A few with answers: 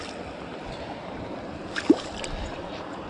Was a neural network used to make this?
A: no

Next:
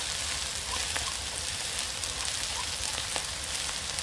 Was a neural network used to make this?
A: no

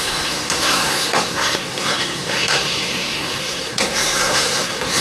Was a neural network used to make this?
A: yes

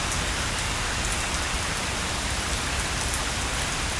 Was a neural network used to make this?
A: no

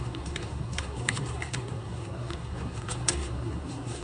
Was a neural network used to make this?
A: yes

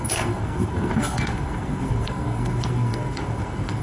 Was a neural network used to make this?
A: yes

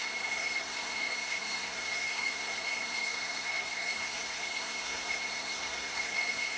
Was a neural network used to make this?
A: yes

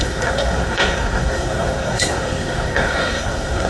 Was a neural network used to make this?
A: yes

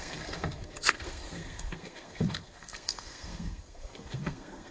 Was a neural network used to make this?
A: yes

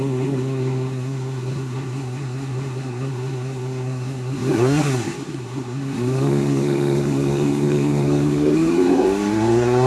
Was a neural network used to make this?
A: yes